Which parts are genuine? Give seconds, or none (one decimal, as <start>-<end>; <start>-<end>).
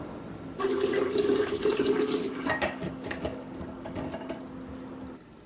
0.0-0.7; 4.0-5.5